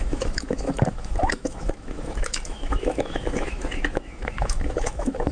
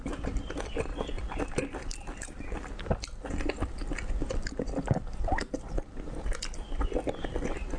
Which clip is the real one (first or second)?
second